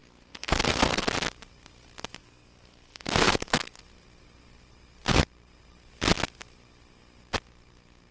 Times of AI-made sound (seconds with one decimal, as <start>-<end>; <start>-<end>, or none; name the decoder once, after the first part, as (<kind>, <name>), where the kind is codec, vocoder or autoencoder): 0.0-1.1 (codec, SNAC); 2.2-3.8